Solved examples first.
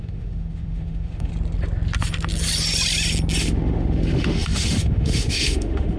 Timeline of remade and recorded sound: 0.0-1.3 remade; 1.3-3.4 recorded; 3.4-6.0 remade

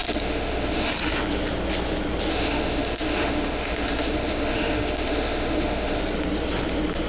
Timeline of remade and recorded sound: 0.0-0.9 remade; 0.9-2.3 recorded; 2.3-6.0 remade; 6.0-7.1 recorded

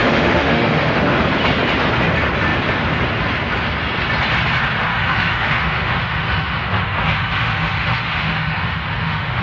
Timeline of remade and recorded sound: 0.0-1.2 remade; 1.2-4.9 recorded; 4.9-9.4 remade

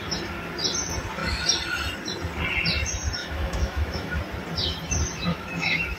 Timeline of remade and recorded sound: 0.0-3.2 recorded; 3.2-4.2 remade; 4.2-5.3 recorded; 5.3-6.0 remade

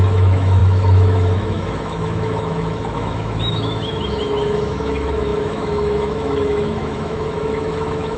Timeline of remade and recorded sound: 0.0-8.2 remade

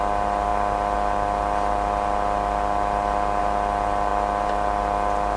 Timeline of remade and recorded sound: 0.0-5.4 recorded